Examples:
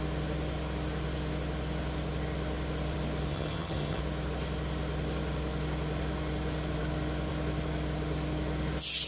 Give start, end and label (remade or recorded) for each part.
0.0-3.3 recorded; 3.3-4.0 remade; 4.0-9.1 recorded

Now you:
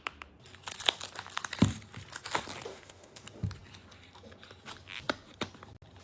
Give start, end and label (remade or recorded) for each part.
0.0-2.7 recorded; 2.7-3.2 remade; 3.2-6.0 recorded

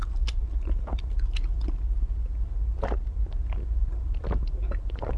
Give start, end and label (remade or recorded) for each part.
0.0-5.2 recorded

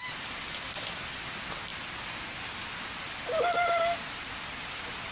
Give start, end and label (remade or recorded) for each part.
0.0-5.1 recorded